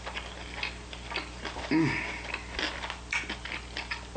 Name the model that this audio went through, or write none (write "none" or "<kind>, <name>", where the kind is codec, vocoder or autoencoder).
none